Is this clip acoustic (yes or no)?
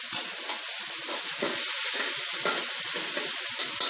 yes